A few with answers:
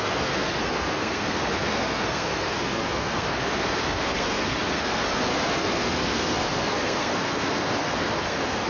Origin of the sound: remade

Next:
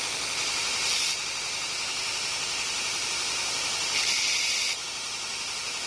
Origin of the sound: recorded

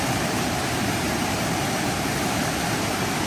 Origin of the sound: remade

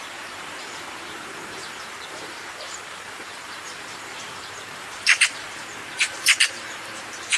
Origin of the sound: remade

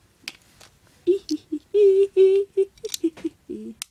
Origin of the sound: recorded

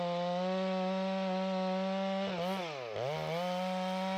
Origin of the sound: recorded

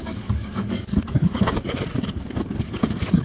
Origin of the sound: remade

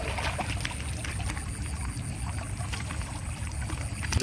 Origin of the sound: recorded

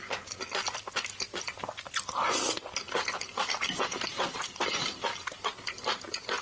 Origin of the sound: recorded